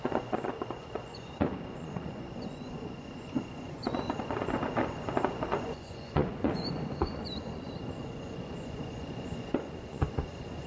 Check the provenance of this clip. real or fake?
fake